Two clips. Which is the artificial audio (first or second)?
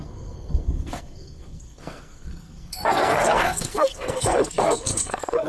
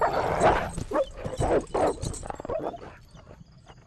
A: first